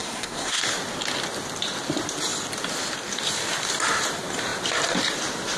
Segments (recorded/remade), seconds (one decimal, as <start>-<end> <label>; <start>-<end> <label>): 0.0-0.6 remade; 0.6-5.6 recorded